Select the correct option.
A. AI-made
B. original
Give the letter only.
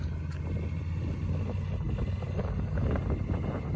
B